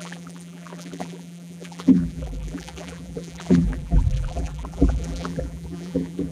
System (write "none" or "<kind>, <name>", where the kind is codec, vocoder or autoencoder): vocoder, BigVGAN v2